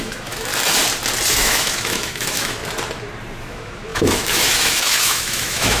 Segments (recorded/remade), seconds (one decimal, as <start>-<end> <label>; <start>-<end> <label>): 0.0-0.5 remade; 0.5-1.3 recorded; 1.3-2.6 remade; 2.6-3.4 recorded; 3.4-5.8 remade